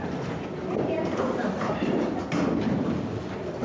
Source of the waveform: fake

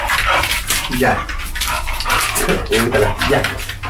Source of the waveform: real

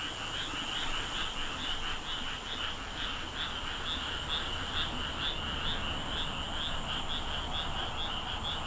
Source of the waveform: real